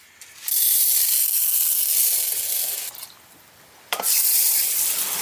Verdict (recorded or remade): recorded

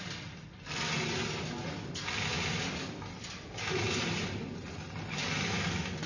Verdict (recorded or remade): recorded